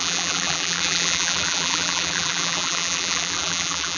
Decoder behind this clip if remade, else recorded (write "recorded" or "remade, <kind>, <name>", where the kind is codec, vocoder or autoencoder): remade, vocoder, BigVGAN v2